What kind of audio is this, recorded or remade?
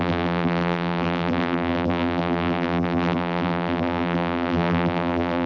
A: remade